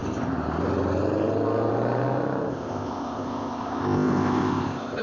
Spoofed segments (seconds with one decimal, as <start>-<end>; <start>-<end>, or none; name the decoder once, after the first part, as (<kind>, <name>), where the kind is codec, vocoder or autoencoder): 2.5-5.0 (codec, ZipCodec)